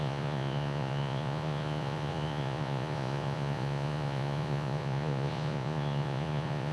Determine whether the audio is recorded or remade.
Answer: remade